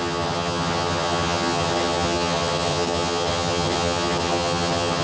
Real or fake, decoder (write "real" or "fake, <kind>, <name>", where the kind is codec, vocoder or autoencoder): fake, vocoder, HiFi-GAN